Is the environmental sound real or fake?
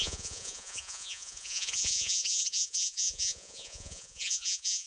fake